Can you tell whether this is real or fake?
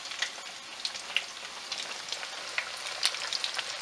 real